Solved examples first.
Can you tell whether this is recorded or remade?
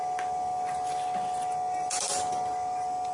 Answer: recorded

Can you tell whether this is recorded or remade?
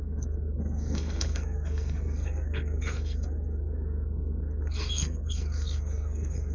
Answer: remade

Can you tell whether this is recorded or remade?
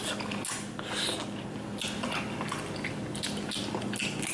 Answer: recorded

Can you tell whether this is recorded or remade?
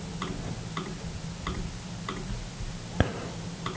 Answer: recorded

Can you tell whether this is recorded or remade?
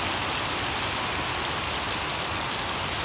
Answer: recorded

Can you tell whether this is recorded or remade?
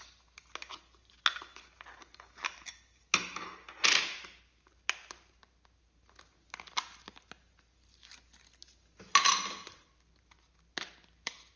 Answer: recorded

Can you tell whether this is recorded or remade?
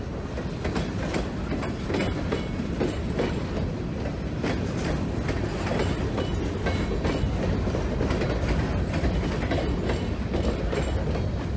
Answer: recorded